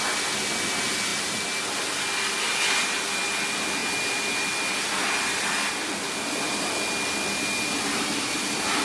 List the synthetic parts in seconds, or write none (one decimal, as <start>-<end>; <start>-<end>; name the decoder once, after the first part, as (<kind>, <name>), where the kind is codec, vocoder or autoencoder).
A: none